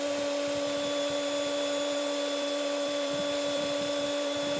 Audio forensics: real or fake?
fake